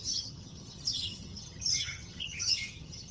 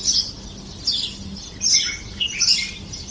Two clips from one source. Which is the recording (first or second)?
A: second